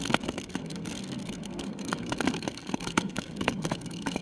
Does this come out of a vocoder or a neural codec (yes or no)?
yes